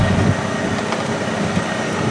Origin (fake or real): real